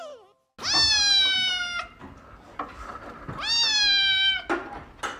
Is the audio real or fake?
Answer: real